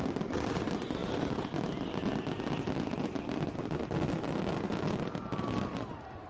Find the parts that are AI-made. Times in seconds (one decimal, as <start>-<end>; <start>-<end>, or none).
none